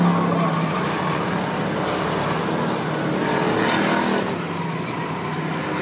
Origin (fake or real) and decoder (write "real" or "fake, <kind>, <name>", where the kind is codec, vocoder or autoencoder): real